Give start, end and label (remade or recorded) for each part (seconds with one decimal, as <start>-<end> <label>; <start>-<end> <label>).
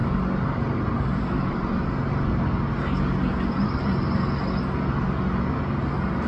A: 0.0-6.3 recorded